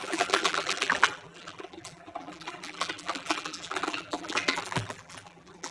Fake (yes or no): yes